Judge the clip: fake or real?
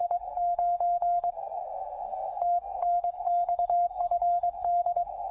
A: fake